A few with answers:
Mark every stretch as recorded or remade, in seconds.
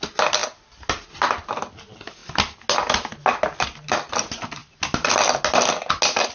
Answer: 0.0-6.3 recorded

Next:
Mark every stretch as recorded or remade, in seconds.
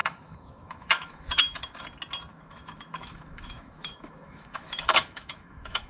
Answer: 0.0-1.8 remade; 1.8-2.3 recorded; 2.3-5.9 remade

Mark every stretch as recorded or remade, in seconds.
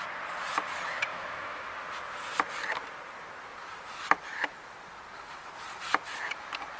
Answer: 0.0-1.1 recorded; 1.1-1.7 remade; 1.7-6.8 recorded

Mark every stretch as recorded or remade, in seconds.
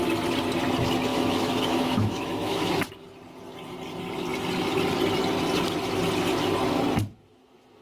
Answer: 0.0-1.1 recorded; 1.1-2.9 remade; 2.9-7.8 recorded